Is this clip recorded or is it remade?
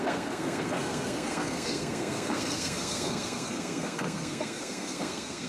remade